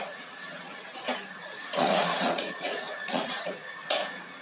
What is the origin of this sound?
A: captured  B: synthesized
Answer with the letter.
B